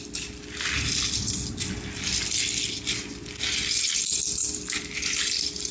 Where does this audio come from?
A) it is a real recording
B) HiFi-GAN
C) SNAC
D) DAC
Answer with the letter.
A